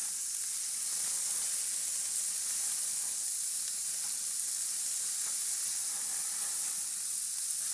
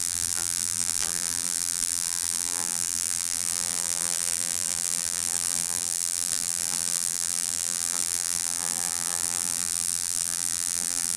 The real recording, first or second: first